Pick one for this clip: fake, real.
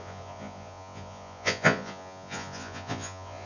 fake